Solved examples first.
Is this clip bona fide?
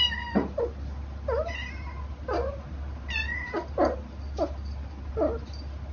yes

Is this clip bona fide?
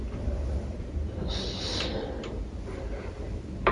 yes